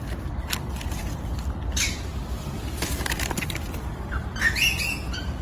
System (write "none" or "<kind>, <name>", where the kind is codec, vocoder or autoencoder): none